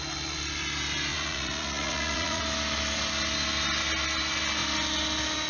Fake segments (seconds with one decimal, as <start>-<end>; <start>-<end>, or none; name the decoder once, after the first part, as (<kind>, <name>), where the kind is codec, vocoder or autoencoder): 1.1-2.4 (vocoder, Vocos)